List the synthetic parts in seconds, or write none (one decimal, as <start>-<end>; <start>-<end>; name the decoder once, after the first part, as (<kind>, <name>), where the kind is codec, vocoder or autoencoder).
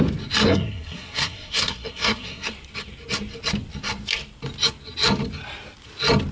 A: 0.4-2.5 (codec, SNAC)